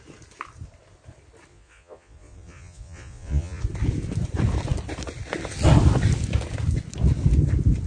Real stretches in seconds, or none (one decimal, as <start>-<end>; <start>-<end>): 0.0-1.5; 3.6-7.9